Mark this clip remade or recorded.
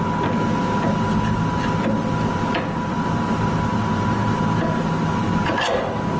recorded